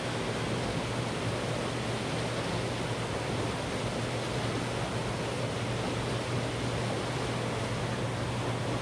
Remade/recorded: recorded